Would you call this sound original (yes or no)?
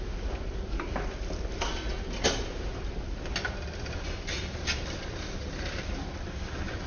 yes